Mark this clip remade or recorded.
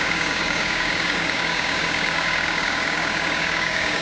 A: remade